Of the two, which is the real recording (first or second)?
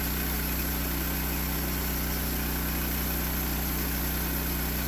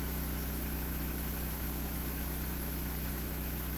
first